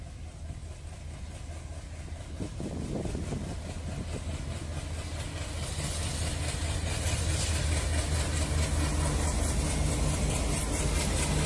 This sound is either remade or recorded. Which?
recorded